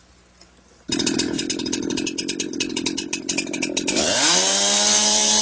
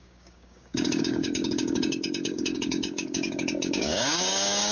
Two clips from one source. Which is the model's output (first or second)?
second